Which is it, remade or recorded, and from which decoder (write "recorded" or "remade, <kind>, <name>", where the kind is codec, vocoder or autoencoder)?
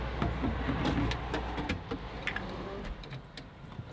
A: recorded